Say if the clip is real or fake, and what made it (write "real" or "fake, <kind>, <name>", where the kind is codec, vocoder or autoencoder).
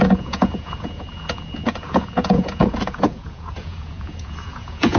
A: fake, vocoder, Vocos